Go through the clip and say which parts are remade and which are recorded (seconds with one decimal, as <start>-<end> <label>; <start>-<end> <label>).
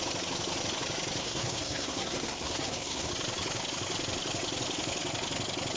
0.0-1.2 recorded; 1.2-3.1 remade; 3.1-5.8 recorded